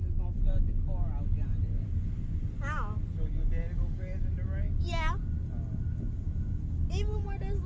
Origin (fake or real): real